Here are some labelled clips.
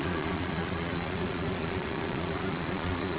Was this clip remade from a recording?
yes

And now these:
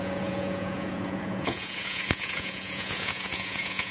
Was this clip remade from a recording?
yes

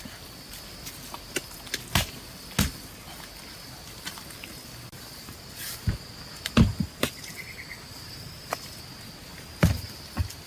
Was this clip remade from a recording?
no